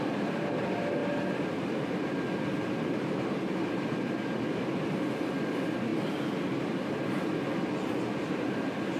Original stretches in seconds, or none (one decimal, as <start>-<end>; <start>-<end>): 0.0-9.0